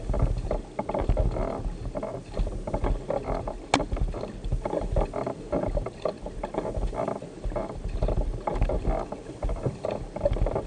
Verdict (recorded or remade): recorded